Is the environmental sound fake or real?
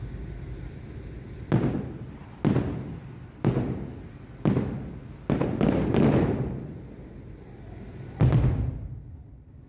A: real